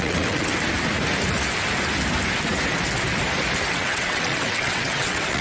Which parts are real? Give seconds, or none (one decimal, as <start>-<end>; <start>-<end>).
0.5-3.7